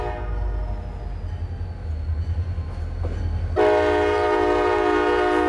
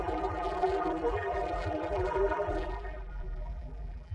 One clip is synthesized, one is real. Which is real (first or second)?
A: first